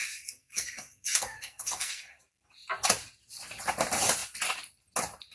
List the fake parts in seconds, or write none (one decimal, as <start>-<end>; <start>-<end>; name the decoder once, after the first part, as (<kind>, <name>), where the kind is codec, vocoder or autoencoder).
0.0-2.2 (codec, SNAC)